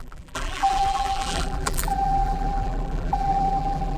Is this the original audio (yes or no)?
no